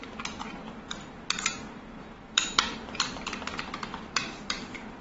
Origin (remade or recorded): remade